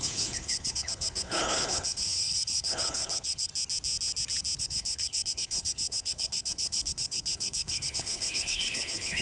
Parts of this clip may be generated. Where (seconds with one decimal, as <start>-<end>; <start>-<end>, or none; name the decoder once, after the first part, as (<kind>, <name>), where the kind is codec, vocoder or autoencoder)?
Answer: 0.0-3.5 (codec, HILCodec); 4.6-9.2